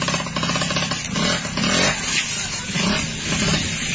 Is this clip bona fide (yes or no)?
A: yes